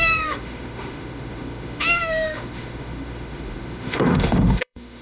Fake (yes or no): yes